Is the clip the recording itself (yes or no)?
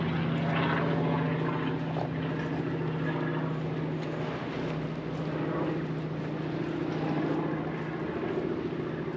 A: yes